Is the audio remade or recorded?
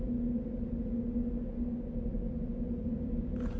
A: recorded